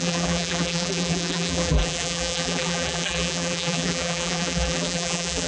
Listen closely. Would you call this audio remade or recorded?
remade